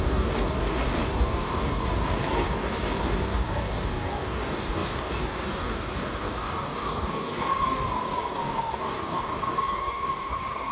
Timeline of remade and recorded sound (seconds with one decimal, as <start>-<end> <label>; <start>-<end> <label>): 0.0-10.7 remade